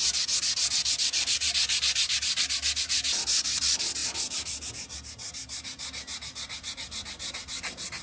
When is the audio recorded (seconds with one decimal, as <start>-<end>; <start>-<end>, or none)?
0.0-8.0